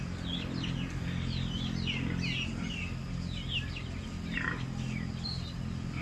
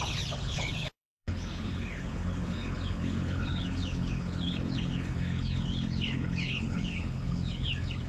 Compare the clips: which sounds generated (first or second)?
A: second